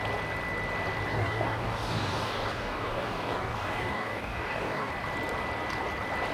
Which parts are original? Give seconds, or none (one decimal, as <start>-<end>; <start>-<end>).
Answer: 0.0-1.1; 4.9-6.3